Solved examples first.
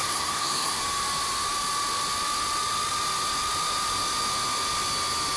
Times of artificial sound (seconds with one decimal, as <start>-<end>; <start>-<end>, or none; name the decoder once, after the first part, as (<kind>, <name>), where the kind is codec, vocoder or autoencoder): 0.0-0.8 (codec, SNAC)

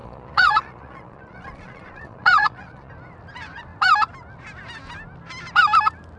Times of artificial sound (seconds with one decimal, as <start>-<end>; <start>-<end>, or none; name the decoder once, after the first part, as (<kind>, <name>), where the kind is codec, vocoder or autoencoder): 0.0-2.9 (vocoder, Vocos)

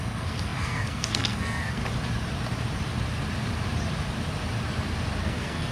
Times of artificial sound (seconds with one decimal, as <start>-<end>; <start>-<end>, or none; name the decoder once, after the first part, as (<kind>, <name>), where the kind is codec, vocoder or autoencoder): 0.0-1.8 (codec, SNAC); 5.2-5.7

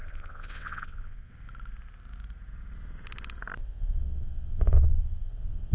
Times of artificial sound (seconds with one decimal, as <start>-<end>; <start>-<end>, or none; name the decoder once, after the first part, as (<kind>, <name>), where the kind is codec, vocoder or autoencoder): 0.0-1.3 (vocoder, WaveNeXt); 3.6-5.7